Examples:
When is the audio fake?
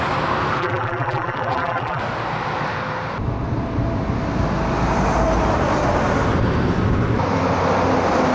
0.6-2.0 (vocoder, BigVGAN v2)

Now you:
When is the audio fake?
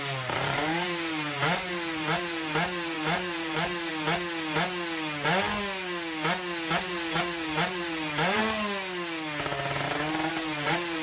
0.0-3.9 (vocoder, BigVGAN v2); 6.8-8.4; 10.3-11.0